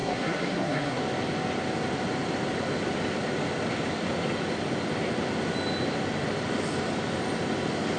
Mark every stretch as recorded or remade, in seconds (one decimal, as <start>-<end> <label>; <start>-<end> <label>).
0.0-1.0 remade; 1.0-8.0 recorded